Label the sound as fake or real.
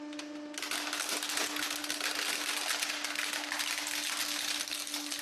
real